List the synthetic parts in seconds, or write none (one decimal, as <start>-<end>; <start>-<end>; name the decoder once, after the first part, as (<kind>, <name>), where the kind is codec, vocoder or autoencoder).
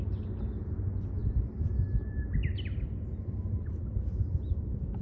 none